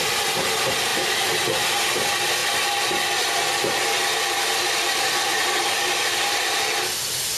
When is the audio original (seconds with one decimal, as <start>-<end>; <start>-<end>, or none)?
0.0-7.4